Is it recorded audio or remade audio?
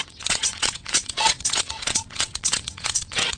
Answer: remade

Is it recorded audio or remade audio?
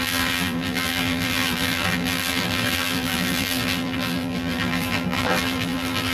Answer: remade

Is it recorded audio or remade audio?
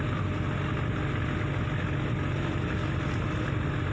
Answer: recorded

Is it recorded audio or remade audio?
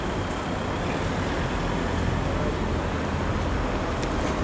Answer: recorded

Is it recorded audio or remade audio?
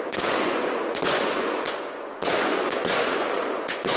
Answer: remade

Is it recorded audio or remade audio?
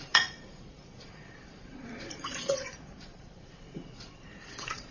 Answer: remade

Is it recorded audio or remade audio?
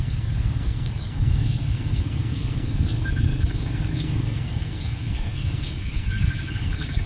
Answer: remade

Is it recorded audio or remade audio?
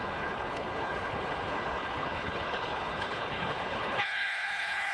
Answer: remade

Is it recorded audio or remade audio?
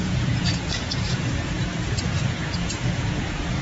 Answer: remade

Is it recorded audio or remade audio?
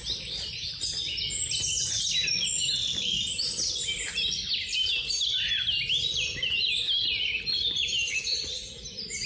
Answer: recorded